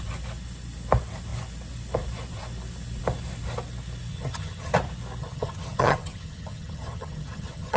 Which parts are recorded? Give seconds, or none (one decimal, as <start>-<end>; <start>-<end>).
0.0-4.1; 4.7-5.2